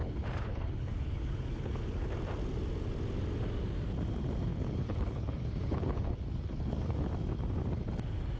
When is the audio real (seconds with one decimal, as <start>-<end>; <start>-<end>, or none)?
2.1-4.5; 7.1-8.4